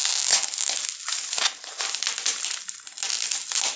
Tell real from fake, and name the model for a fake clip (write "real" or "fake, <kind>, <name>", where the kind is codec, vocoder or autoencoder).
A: real